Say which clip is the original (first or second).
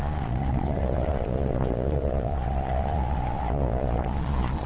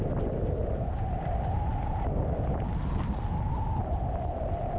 second